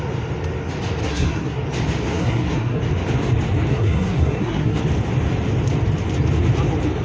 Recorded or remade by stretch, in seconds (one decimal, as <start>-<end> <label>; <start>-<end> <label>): 0.0-1.0 recorded; 1.0-1.6 remade; 1.6-2.1 recorded; 2.1-2.8 remade; 2.8-3.7 recorded; 3.7-4.8 remade; 4.8-7.0 recorded